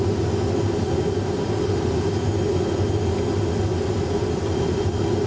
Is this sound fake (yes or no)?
no